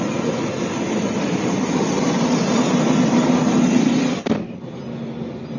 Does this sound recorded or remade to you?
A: recorded